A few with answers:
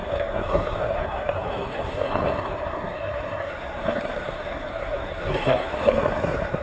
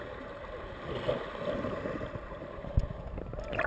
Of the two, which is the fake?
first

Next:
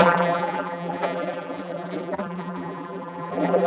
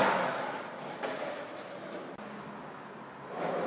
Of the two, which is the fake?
first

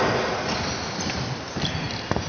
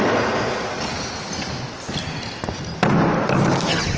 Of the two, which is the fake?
first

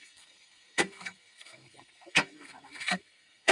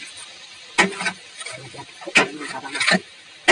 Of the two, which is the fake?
first